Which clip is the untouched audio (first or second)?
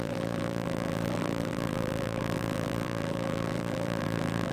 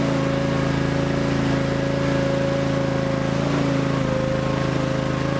second